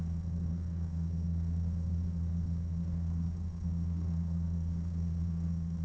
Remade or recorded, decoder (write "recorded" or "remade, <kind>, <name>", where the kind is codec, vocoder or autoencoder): remade, codec, SNAC